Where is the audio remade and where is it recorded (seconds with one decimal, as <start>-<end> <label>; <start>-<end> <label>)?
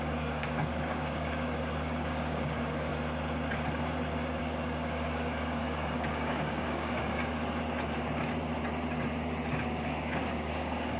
0.0-2.9 remade; 2.9-4.4 recorded; 4.4-7.2 remade; 7.2-9.5 recorded; 9.5-11.0 remade